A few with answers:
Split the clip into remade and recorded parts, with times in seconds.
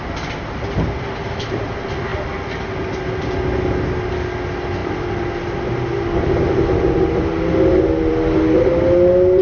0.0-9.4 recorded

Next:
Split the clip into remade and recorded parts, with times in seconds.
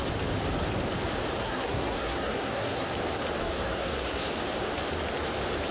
0.0-1.4 recorded; 1.4-2.9 remade; 2.9-3.4 recorded; 3.4-4.3 remade; 4.3-5.7 recorded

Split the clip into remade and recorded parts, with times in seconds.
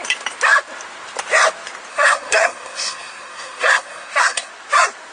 0.0-1.9 recorded; 1.9-4.5 remade; 4.5-5.1 recorded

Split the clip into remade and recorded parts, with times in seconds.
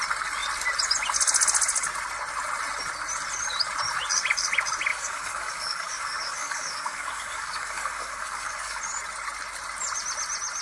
0.0-4.9 recorded; 4.9-8.8 remade; 8.8-10.6 recorded